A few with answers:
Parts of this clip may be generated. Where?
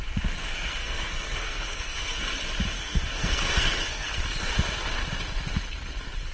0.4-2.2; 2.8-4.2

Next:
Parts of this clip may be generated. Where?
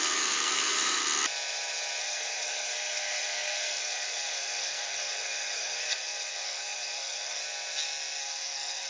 0.0-1.0; 2.0-7.4; 8.2-8.9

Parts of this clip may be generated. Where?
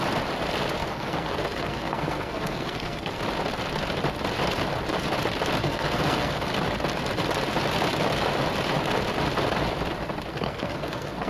0.8-3.2; 5.6-6.3; 10.3-11.3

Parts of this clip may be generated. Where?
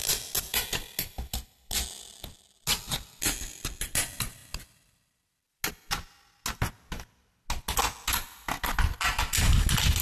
none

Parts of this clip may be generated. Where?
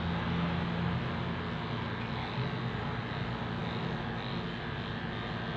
none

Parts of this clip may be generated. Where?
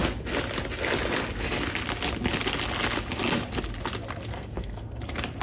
4.3-5.0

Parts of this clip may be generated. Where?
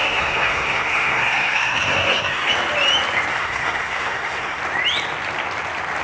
0.0-2.5; 3.3-4.6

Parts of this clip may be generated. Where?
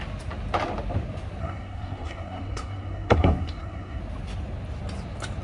1.4-4.0